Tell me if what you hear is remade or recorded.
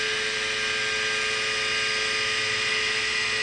recorded